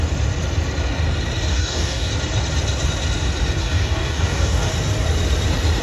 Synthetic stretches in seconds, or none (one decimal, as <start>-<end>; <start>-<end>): 1.5-2.1; 3.6-4.7